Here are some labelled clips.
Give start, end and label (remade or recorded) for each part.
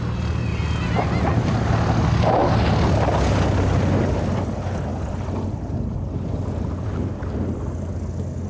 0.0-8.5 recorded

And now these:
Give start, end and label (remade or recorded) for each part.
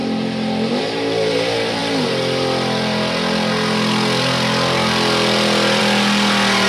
0.0-6.7 recorded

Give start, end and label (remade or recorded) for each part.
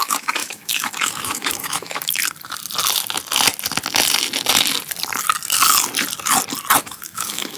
0.0-2.2 remade; 2.2-6.8 recorded; 6.8-7.6 remade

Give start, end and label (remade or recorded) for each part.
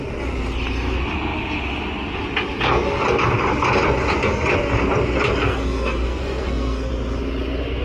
0.0-5.4 recorded; 5.4-6.9 remade; 6.9-7.8 recorded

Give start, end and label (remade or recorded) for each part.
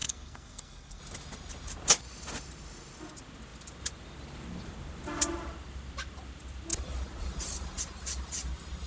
0.0-1.0 remade; 1.0-8.9 recorded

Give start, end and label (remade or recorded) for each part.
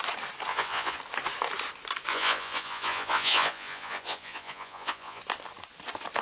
0.0-0.5 recorded; 0.5-1.0 remade; 1.0-2.1 recorded; 2.1-5.2 remade; 5.2-6.2 recorded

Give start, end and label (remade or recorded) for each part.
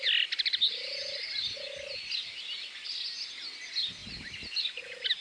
0.0-5.2 recorded